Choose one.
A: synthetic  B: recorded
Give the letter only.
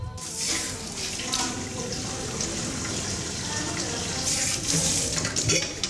B